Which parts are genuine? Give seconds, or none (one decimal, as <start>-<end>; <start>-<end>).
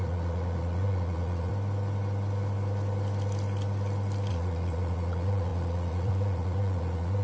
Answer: 1.5-4.3